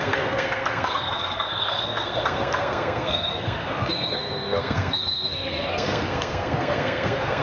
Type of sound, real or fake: fake